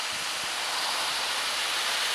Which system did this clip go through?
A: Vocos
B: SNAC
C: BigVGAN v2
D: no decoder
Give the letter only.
D